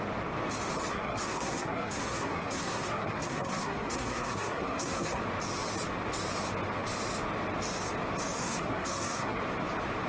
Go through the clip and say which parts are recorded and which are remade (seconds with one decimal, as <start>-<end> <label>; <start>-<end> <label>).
0.0-0.9 recorded; 0.9-5.2 remade; 5.2-8.4 recorded; 8.4-9.4 remade; 9.4-10.1 recorded